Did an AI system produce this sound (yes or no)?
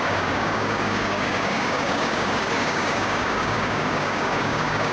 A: yes